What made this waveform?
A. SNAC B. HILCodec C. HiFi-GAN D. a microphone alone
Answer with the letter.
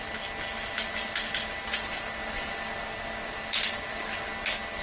D